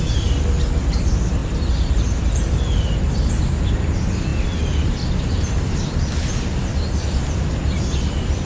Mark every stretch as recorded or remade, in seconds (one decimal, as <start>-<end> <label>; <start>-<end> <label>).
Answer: 0.0-1.4 recorded; 1.4-3.4 remade; 3.4-4.3 recorded; 4.3-5.2 remade; 5.2-8.5 recorded